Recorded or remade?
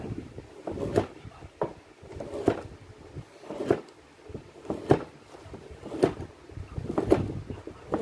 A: recorded